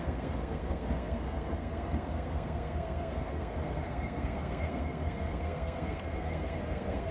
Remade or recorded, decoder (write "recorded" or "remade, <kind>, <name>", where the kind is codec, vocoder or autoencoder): remade, codec, SNAC